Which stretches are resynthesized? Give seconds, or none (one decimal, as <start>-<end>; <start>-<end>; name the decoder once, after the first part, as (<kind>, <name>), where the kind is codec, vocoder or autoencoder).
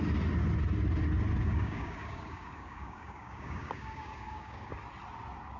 1.4-4.8 (codec, DAC)